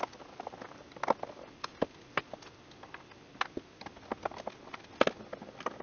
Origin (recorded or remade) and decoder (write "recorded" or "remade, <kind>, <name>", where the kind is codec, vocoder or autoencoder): recorded